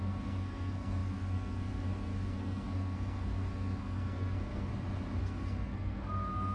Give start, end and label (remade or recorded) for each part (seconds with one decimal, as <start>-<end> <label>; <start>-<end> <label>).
0.0-4.7 remade; 4.7-5.2 recorded; 5.2-6.5 remade